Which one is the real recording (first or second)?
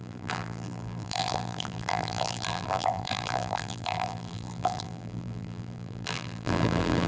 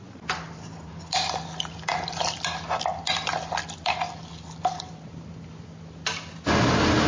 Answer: second